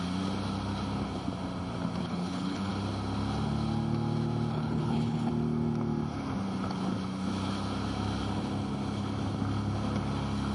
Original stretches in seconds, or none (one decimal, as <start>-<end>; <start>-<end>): 0.0-2.0; 2.7-4.5; 5.3-10.5